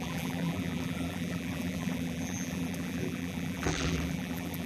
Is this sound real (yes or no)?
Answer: no